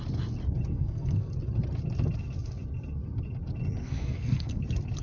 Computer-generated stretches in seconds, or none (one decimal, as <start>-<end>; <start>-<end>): 0.7-1.3; 3.8-4.6